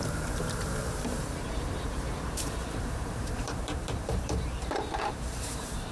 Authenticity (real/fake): fake